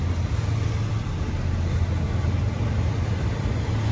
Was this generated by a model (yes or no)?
no